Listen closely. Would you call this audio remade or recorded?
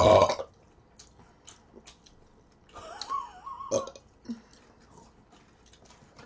recorded